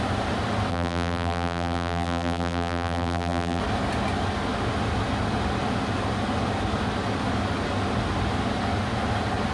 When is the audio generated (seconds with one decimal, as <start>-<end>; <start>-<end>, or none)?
0.7-3.6